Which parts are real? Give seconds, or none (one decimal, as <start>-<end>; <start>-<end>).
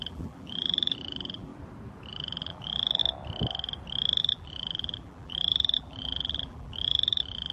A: 1.5-2.1; 3.0-4.2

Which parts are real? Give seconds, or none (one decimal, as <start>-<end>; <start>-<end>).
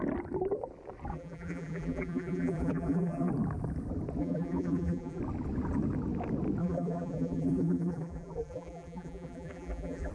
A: 0.0-1.1; 3.3-4.2; 5.2-6.6